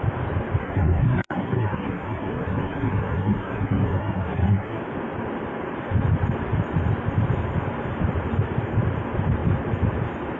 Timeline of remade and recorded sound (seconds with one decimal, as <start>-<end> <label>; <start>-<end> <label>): 0.0-0.6 recorded; 0.6-4.8 remade; 4.8-10.4 recorded